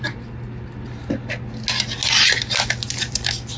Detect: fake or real real